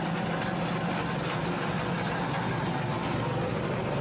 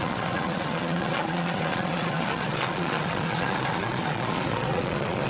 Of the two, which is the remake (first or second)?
second